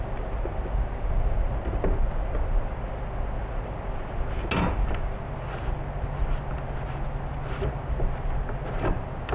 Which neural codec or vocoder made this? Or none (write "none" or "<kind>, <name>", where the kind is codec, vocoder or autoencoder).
none